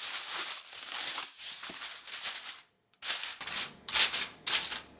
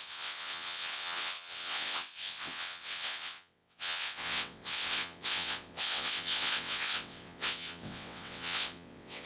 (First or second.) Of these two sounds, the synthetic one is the second